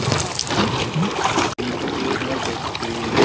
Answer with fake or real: real